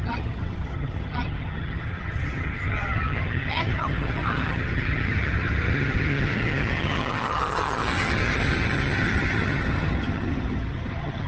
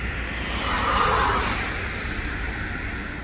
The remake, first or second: first